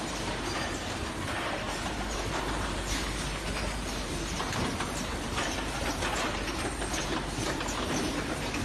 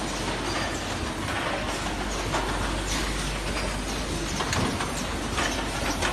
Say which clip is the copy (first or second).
first